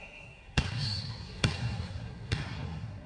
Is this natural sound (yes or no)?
no